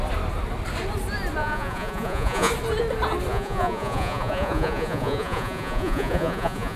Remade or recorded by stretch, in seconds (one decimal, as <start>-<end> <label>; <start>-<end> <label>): 0.0-1.4 recorded; 1.4-2.5 remade; 2.5-3.3 recorded; 3.3-6.8 remade